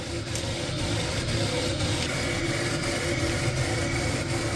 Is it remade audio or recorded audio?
recorded